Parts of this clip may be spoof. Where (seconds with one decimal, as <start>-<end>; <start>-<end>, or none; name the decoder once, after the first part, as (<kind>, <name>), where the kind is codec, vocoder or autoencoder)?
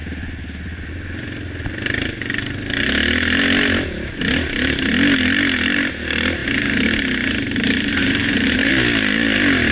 8.0-8.7 (vocoder, BigVGAN v2)